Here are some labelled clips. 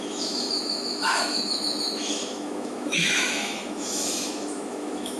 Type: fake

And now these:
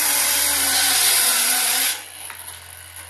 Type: real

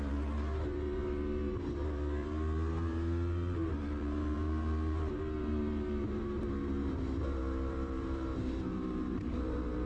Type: fake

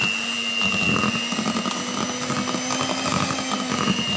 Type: real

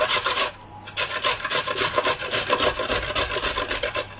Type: real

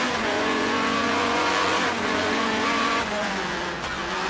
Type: fake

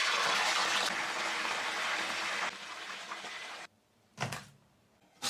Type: fake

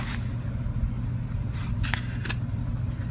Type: real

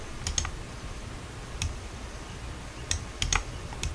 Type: real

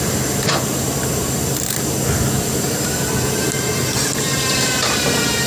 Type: fake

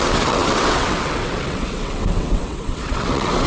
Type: fake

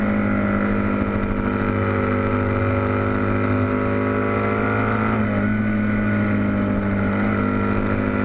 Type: real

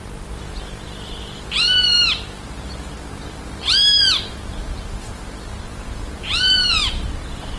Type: fake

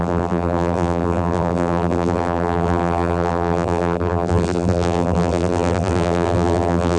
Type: fake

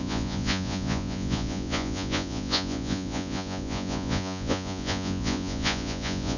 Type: fake